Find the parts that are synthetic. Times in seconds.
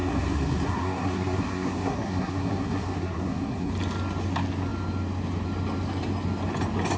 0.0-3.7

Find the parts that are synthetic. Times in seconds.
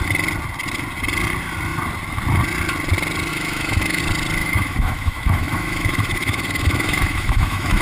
3.3-4.0; 4.4-7.8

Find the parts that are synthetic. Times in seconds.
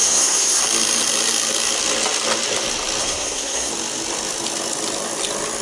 0.0-0.6; 3.0-3.7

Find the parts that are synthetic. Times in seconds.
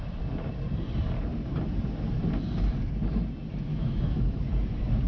3.7-4.4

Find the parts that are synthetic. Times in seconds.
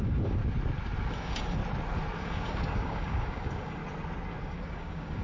0.0-0.4; 1.1-1.6; 2.2-3.8; 4.4-5.2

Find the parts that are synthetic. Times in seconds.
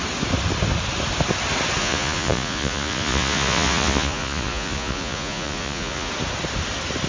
1.8-6.1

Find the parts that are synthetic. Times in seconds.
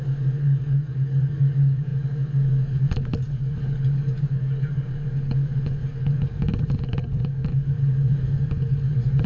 0.0-9.3